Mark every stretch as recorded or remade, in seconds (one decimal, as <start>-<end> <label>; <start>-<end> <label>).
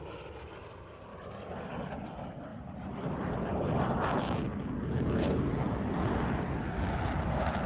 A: 0.0-1.1 remade; 1.1-1.8 recorded; 1.8-4.1 remade; 4.1-6.2 recorded; 6.2-7.7 remade